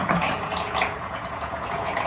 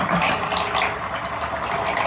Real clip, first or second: second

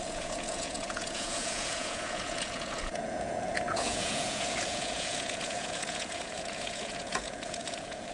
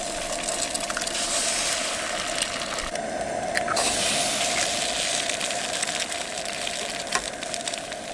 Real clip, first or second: second